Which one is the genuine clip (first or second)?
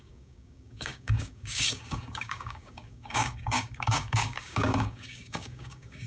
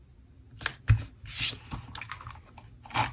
second